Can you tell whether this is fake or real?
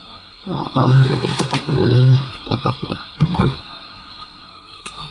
fake